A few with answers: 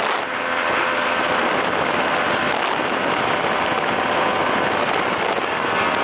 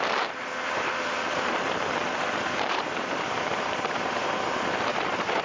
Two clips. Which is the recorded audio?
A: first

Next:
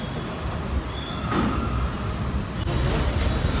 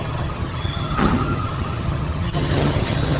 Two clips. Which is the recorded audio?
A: first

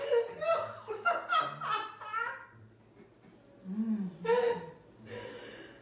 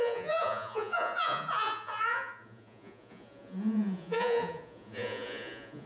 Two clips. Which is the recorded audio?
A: first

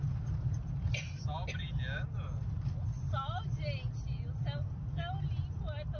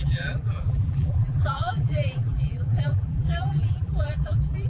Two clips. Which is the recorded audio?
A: first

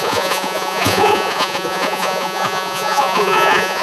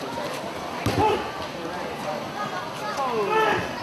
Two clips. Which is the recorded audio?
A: second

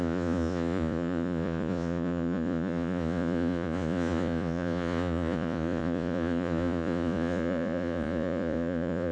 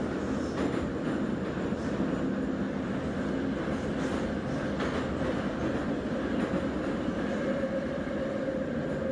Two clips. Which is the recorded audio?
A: second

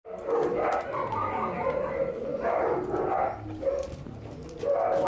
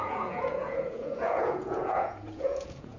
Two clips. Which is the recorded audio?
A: first